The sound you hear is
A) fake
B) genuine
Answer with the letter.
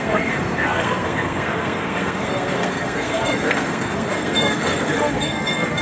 A